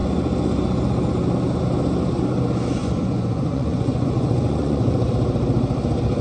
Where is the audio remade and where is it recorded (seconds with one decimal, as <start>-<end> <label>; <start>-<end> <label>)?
0.0-2.8 recorded; 2.8-5.1 remade; 5.1-6.2 recorded